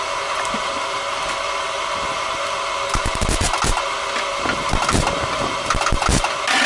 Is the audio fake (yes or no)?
no